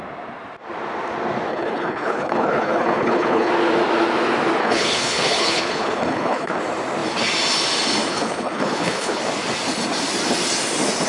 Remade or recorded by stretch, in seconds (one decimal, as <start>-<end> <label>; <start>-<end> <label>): 0.0-1.5 recorded; 1.5-3.5 remade; 3.5-4.6 recorded; 4.6-6.6 remade; 6.6-8.1 recorded; 8.1-9.2 remade; 9.2-11.1 recorded